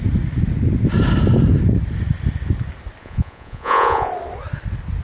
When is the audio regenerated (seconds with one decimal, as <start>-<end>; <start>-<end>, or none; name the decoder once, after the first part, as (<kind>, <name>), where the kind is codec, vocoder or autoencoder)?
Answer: 3.0-4.1 (vocoder, Vocos)